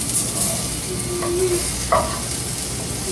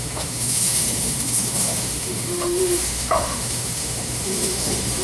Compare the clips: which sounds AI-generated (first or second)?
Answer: second